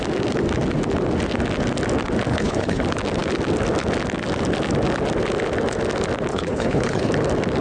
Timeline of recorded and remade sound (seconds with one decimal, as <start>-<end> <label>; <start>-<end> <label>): 0.0-2.3 recorded; 2.3-2.8 remade; 2.8-6.3 recorded; 6.3-7.1 remade; 7.1-7.6 recorded